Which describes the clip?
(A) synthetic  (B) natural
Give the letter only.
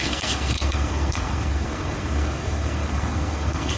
A